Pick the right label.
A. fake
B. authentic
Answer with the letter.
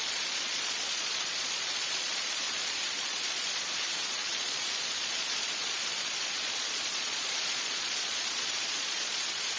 A